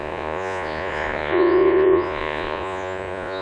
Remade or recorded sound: remade